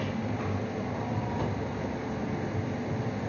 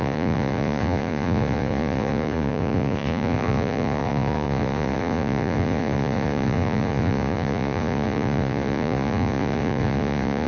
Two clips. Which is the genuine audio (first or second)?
first